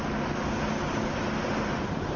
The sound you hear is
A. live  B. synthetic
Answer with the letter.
A